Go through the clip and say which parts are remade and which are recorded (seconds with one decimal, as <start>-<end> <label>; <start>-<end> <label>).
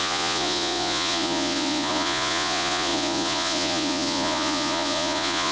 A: 0.0-5.5 remade